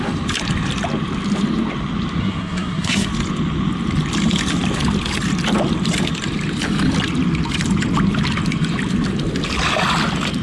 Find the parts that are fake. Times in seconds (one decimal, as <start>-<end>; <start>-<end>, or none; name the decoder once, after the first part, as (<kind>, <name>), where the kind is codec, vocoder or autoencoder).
2.2-3.1 (codec, SNAC)